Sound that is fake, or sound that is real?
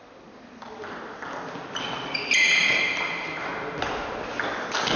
real